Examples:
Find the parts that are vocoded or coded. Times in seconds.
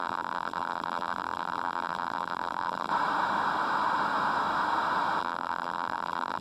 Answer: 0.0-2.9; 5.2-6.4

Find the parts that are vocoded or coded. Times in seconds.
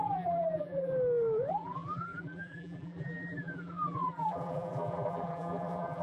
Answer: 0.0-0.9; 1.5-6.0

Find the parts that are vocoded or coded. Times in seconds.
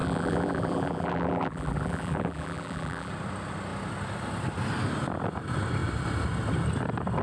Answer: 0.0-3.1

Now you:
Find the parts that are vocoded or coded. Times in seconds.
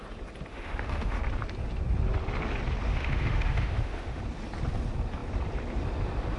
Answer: 0.5-1.2; 2.9-4.2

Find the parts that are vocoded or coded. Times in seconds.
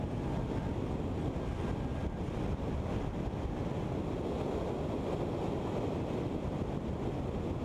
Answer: none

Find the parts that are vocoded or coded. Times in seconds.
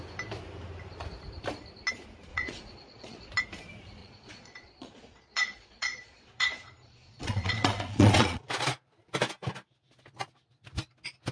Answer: 2.3-3.3; 4.0-8.5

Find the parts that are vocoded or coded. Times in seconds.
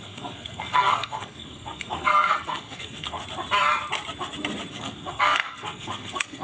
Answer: 0.0-3.2; 4.7-6.4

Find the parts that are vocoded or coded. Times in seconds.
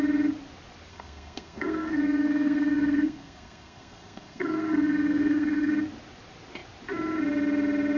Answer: 0.9-5.7